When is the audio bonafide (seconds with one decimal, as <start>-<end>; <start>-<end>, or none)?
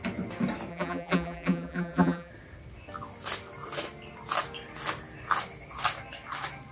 0.0-0.7; 2.3-6.7